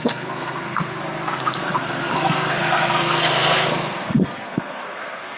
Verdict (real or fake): fake